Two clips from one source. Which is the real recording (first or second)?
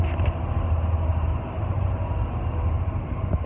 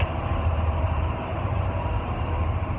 first